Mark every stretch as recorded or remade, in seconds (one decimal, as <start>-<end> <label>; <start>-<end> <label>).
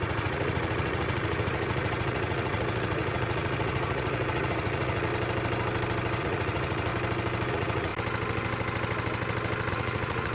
0.0-5.1 remade; 5.1-6.2 recorded; 6.2-6.9 remade; 6.9-7.5 recorded; 7.5-7.9 remade; 7.9-9.7 recorded; 9.7-10.3 remade